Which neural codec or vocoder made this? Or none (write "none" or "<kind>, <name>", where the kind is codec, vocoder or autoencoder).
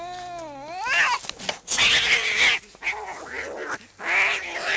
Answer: none